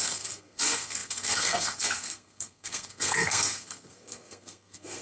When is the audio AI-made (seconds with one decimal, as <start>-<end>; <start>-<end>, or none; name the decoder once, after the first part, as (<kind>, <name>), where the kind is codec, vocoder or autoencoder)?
0.0-5.0 (codec, SNAC)